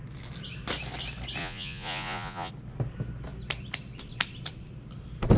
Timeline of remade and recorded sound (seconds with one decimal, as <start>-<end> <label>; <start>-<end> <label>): 0.0-1.4 recorded; 1.4-2.5 remade; 2.5-5.4 recorded